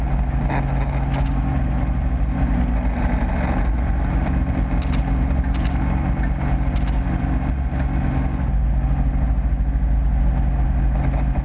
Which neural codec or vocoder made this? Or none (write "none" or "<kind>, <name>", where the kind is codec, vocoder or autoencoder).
none